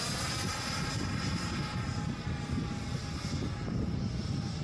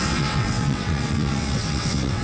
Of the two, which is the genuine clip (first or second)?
first